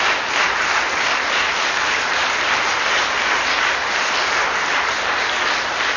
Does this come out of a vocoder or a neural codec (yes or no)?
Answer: no